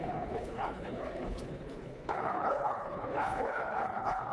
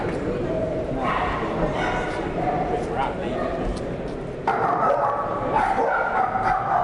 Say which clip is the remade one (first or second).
first